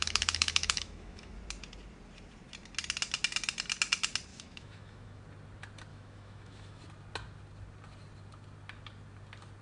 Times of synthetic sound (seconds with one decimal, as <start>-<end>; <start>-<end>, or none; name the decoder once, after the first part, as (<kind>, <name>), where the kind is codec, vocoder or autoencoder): 0.0-1.3 (autoencoder, DAC-VAE); 4.3-5.2; 5.9-6.8